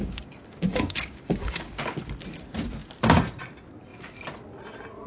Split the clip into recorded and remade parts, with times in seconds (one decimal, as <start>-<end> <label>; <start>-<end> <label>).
0.0-1.8 remade; 1.8-5.1 recorded